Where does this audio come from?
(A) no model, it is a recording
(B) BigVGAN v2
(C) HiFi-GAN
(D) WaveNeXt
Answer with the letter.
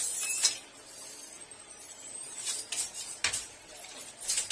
A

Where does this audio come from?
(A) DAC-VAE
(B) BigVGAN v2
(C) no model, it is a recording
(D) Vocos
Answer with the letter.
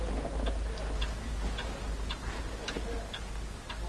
C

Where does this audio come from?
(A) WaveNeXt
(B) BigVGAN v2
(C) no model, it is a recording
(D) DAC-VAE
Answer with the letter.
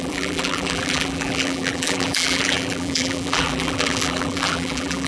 B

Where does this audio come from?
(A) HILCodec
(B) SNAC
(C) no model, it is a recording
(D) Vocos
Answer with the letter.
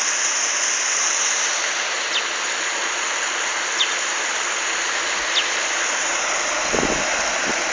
C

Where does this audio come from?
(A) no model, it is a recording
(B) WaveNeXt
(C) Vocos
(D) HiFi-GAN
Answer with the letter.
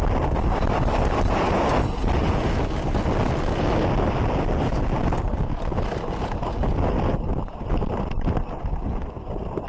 A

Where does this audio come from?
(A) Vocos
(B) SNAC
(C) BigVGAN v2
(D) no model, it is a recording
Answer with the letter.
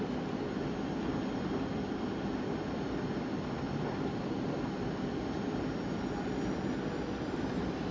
D